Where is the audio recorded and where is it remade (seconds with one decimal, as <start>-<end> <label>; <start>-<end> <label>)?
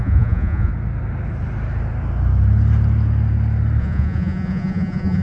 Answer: 0.0-0.7 remade; 0.7-3.8 recorded; 3.8-5.2 remade